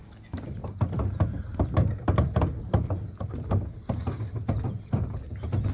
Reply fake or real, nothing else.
real